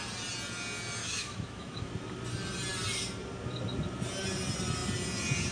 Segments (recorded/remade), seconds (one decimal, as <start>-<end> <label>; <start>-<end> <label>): 0.0-1.0 recorded; 1.0-1.9 remade; 1.9-5.5 recorded